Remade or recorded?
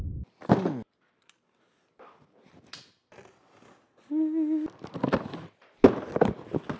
recorded